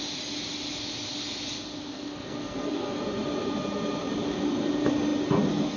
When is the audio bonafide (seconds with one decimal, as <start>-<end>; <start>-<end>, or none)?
0.0-1.9; 3.0-5.8